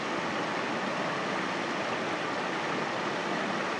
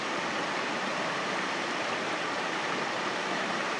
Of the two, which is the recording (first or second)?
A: first